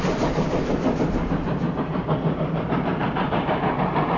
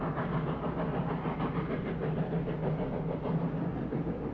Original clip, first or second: second